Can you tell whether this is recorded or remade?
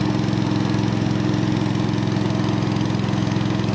recorded